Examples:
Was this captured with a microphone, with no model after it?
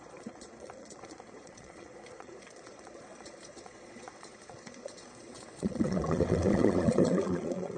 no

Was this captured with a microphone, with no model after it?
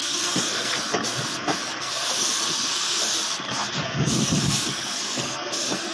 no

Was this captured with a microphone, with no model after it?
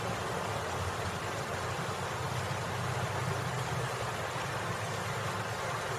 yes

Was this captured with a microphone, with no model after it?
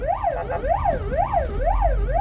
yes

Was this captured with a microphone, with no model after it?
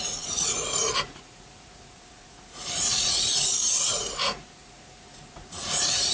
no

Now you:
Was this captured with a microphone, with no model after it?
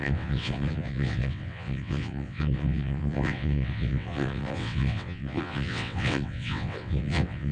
no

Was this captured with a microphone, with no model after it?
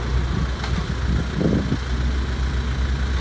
yes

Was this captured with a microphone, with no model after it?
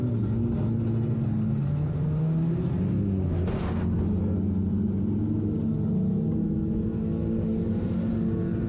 yes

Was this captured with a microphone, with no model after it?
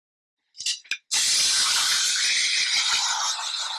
yes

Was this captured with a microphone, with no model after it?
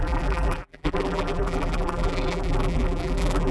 no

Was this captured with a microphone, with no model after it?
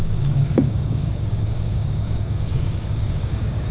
no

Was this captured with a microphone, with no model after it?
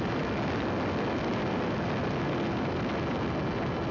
yes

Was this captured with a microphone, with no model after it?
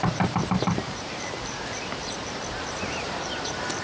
no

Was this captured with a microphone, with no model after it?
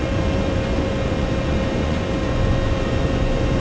no